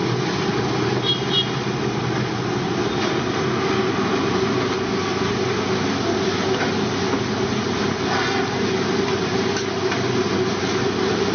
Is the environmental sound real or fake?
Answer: real